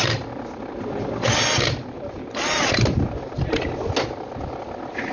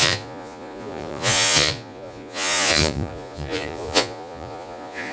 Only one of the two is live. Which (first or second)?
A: first